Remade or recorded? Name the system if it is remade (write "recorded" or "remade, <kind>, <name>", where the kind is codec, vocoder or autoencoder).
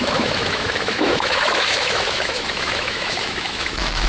remade, autoencoder, DAC-VAE